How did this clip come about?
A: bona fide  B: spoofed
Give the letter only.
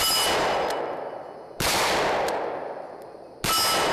A